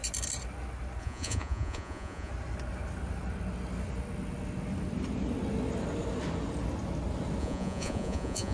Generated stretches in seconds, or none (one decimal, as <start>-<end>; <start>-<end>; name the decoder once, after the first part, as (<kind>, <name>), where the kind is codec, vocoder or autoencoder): 1.0-2.3 (vocoder, Vocos); 7.4-8.5